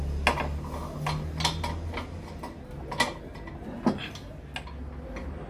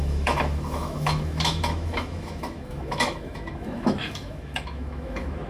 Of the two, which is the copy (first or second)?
second